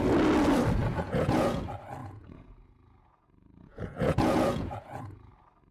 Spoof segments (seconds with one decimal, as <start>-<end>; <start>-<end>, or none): 0.8-1.6; 2.0-5.3